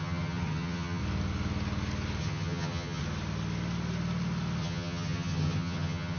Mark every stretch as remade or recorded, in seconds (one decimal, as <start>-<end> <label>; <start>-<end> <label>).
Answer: 0.0-1.0 remade; 1.0-2.2 recorded; 2.2-3.0 remade; 3.0-4.6 recorded; 4.6-6.2 remade